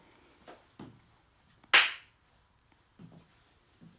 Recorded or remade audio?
recorded